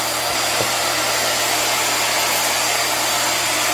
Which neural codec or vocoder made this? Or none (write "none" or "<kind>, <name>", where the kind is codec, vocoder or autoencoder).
none